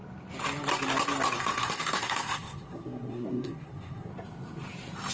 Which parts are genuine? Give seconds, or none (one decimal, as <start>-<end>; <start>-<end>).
0.0-1.4; 4.1-5.1